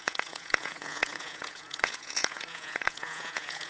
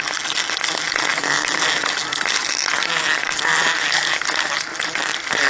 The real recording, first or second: second